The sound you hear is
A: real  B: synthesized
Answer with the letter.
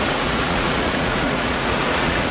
B